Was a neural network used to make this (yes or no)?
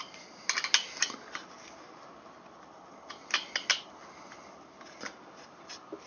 no